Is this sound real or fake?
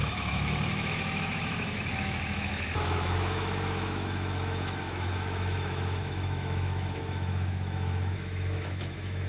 fake